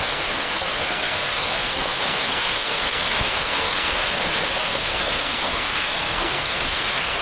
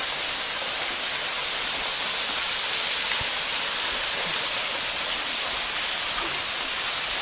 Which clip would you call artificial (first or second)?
first